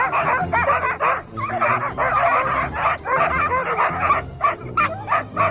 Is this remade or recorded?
recorded